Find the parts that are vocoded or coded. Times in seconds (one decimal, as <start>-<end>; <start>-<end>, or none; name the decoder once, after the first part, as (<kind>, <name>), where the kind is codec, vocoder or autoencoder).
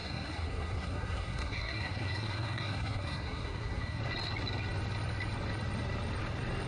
0.0-4.0 (codec, SNAC)